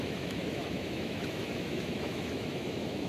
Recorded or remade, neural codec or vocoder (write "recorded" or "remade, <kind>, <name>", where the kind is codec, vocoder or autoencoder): remade, autoencoder, DAC-VAE